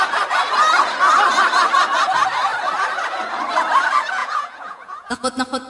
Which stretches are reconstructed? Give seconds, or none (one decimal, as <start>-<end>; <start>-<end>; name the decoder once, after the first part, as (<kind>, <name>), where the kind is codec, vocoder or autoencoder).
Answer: 4.2-5.3 (vocoder, Vocos)